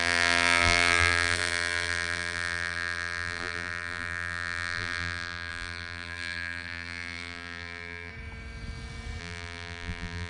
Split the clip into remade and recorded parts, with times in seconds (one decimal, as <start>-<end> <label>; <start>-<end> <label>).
0.0-8.1 remade; 8.1-9.2 recorded; 9.2-10.3 remade